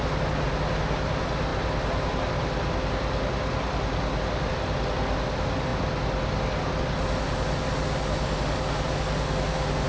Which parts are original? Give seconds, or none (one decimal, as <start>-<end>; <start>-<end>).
0.0-9.9